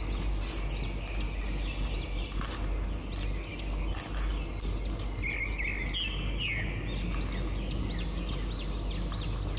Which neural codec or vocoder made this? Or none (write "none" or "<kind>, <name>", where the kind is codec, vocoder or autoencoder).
none